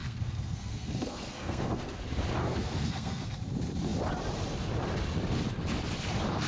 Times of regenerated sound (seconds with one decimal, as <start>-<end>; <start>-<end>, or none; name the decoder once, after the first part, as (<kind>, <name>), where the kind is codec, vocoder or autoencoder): 0.0-2.0 (codec, SNAC); 2.4-3.4